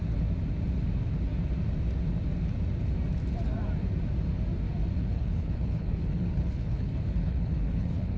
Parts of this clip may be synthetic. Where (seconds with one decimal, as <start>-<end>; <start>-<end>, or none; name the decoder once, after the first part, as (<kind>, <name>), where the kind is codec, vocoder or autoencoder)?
5.0-8.2 (codec, HILCodec)